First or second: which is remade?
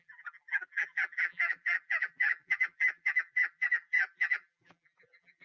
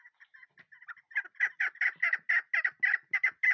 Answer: first